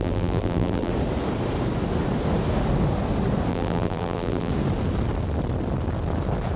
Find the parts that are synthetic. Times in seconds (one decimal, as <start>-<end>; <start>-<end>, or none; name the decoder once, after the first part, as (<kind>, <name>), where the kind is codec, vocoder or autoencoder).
0.0-0.9 (vocoder, BigVGAN v2); 3.5-4.5